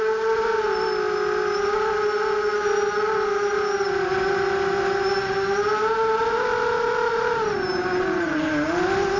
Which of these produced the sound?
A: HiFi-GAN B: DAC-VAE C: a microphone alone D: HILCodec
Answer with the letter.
C